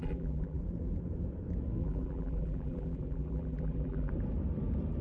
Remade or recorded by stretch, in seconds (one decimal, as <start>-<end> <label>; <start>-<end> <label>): 0.0-0.6 remade; 0.6-1.8 recorded; 1.8-4.1 remade; 4.1-5.0 recorded